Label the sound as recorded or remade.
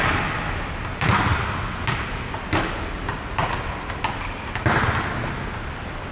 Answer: recorded